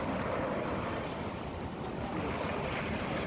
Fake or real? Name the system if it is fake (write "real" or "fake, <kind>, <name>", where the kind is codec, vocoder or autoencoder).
real